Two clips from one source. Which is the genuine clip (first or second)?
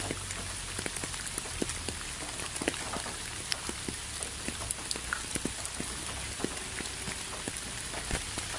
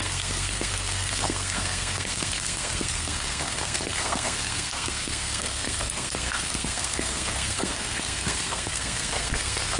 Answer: first